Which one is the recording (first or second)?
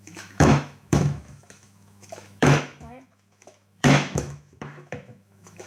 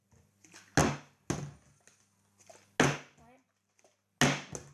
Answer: second